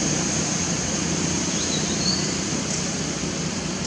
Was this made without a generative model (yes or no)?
yes